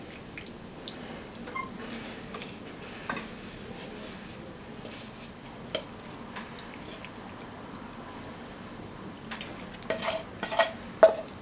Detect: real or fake real